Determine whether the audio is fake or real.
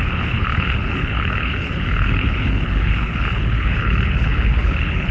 fake